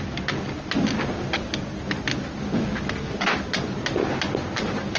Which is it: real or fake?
real